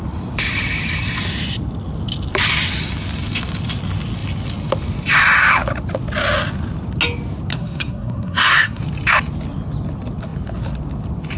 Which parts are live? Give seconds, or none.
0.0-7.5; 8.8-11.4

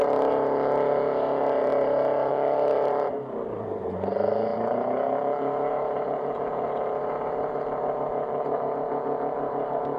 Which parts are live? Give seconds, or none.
none